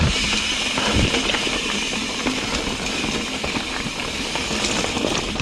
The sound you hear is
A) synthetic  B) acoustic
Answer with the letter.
B